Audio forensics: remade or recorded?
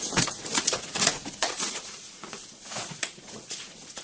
remade